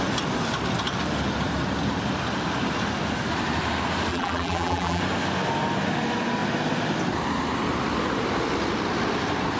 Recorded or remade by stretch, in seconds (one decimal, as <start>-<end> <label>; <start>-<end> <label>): 0.0-4.1 recorded; 4.1-5.0 remade; 5.0-9.6 recorded